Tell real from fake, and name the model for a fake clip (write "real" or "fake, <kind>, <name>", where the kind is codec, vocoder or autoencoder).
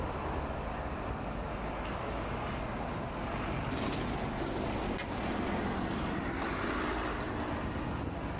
real